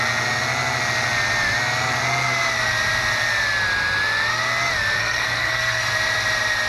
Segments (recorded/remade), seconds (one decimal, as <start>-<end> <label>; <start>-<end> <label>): 0.0-5.0 recorded; 5.0-5.9 remade; 5.9-6.7 recorded